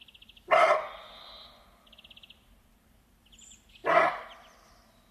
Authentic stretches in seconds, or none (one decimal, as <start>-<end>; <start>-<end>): 0.0-5.1